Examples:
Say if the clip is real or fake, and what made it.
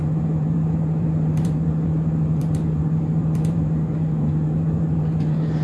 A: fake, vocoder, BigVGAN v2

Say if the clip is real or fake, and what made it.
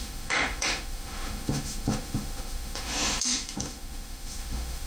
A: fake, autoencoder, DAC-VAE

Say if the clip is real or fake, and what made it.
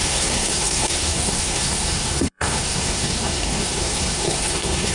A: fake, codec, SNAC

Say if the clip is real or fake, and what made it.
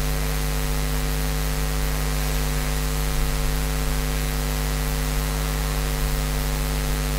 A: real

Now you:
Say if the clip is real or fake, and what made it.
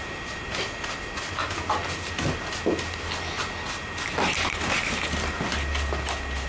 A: real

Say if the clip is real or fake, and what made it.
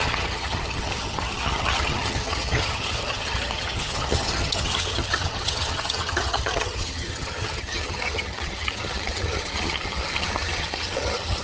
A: fake, vocoder, HiFi-GAN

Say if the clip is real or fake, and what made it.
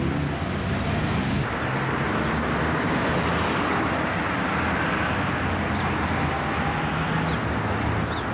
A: real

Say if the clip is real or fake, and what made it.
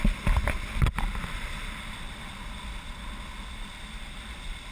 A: real